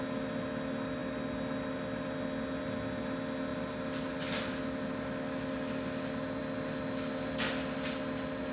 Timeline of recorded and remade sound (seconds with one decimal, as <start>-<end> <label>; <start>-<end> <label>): 0.0-8.5 recorded